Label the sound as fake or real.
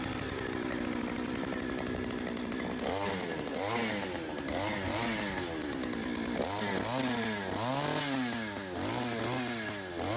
real